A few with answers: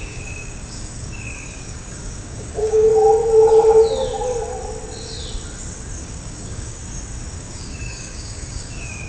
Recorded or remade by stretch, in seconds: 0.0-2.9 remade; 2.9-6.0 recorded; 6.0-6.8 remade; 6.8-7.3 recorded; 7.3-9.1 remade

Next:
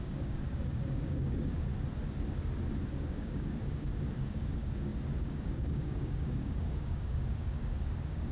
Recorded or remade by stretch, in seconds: 0.0-1.7 remade; 1.7-3.0 recorded; 3.0-8.3 remade